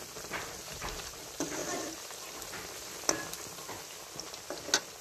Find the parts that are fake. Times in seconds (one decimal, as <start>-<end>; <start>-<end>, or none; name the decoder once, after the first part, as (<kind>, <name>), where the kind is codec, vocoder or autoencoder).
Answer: none